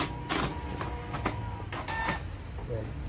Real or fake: real